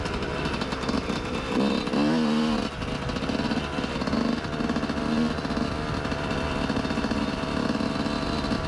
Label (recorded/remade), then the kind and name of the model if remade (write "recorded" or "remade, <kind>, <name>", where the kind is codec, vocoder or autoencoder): recorded